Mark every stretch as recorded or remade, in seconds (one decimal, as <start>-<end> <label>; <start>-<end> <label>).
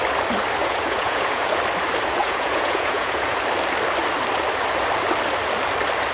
0.0-0.6 recorded; 0.6-1.6 remade; 1.6-2.2 recorded; 2.2-3.4 remade; 3.4-6.1 recorded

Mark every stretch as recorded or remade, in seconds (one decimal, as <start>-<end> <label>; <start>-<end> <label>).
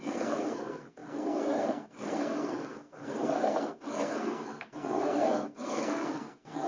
0.0-6.7 remade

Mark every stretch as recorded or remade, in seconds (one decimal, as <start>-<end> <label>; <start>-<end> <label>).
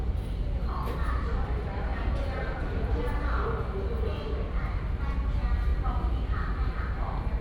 0.0-1.9 recorded; 1.9-3.0 remade; 3.0-7.4 recorded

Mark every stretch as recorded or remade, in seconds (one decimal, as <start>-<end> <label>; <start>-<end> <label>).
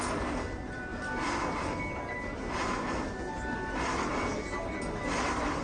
0.0-5.6 recorded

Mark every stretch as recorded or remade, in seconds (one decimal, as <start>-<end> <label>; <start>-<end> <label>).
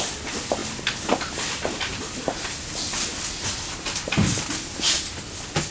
0.0-5.7 recorded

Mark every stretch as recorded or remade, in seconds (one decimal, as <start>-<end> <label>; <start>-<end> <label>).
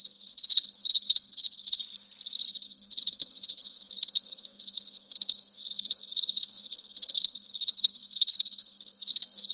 0.0-1.8 remade; 1.8-2.5 recorded; 2.5-9.5 remade